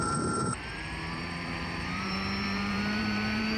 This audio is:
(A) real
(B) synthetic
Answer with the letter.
B